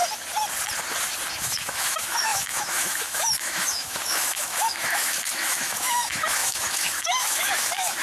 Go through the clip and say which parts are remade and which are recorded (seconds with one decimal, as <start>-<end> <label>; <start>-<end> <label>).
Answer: 0.0-1.4 recorded; 1.4-8.0 remade